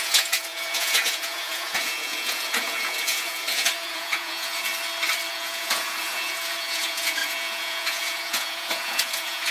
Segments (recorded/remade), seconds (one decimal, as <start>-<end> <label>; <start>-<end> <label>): 0.0-4.7 remade; 4.7-5.3 recorded; 5.3-9.5 remade